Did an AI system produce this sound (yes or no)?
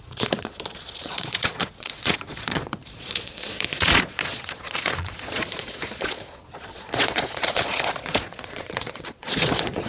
yes